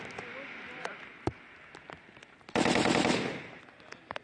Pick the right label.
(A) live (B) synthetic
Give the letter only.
A